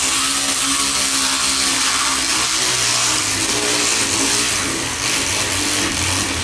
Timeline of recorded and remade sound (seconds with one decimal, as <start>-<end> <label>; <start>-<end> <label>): 0.0-6.4 recorded